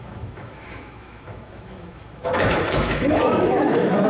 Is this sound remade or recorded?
remade